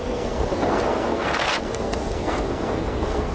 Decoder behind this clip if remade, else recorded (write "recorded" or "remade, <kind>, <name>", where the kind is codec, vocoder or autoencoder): remade, codec, SNAC